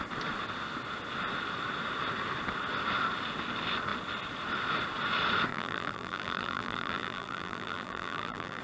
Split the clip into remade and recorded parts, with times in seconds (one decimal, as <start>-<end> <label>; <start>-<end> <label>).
0.0-5.5 recorded; 5.5-8.6 remade